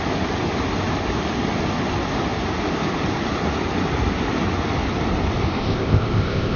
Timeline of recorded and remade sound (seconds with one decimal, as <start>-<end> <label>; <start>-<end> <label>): 0.0-5.6 recorded; 5.6-6.6 remade